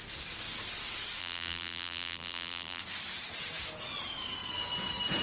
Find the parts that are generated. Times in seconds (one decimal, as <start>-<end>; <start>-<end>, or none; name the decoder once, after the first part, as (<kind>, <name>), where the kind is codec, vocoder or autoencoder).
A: 1.2-2.8 (vocoder, BigVGAN v2)